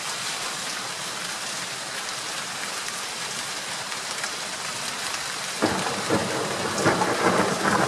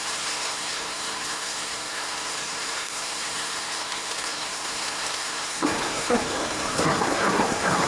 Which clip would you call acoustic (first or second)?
first